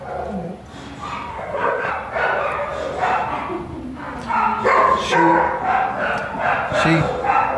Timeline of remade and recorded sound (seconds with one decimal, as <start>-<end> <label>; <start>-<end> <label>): 0.0-1.3 recorded; 1.3-1.9 remade; 1.9-7.6 recorded